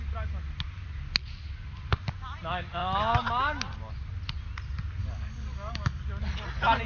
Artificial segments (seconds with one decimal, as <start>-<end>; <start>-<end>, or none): 5.0-6.0